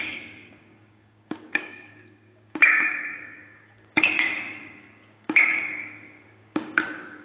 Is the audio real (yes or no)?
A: no